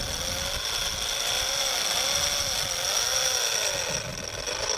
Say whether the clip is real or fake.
real